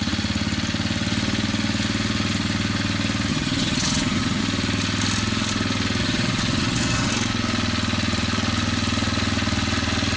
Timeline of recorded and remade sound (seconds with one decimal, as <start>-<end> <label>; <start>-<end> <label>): 0.0-3.3 recorded; 3.3-4.4 remade; 4.4-6.0 recorded; 6.0-7.1 remade; 7.1-10.2 recorded